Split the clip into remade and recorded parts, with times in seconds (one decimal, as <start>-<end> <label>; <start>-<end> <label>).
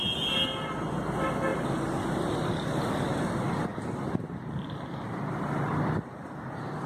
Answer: 0.0-6.9 recorded